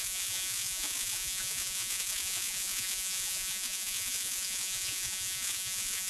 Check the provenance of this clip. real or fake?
fake